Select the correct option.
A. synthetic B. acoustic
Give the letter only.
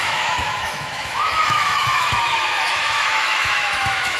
A